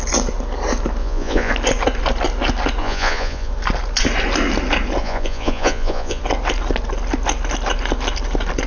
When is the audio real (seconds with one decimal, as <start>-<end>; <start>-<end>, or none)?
0.0-1.0; 1.5-2.8; 3.5-5.0; 6.2-8.7